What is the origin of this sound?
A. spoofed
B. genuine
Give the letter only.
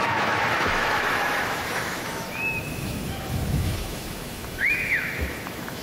A